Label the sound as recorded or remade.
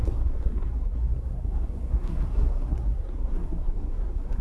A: remade